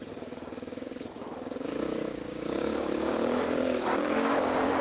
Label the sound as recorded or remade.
remade